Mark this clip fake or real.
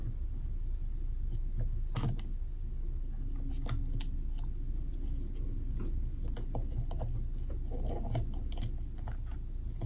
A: real